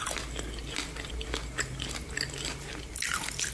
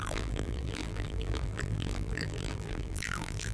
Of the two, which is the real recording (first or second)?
first